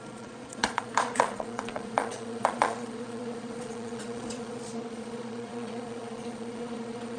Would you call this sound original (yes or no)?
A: no